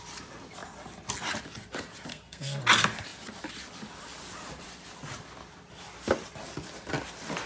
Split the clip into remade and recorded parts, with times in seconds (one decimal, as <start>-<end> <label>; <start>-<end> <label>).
0.0-2.1 recorded; 2.1-2.6 remade; 2.6-7.5 recorded